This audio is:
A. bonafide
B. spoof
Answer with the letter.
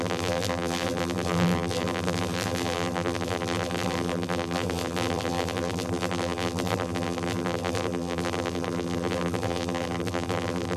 B